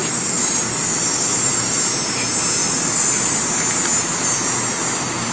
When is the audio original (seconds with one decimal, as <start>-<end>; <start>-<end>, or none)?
1.8-2.6; 3.4-5.3